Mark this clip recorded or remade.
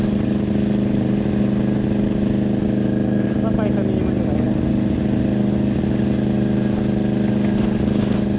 recorded